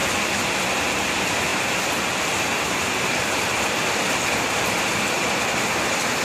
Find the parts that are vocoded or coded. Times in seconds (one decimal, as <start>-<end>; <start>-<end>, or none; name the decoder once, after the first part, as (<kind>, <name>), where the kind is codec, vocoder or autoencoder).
0.0-0.7 (vocoder, BigVGAN v2); 1.5-4.9